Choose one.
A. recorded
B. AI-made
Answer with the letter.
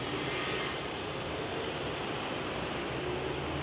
A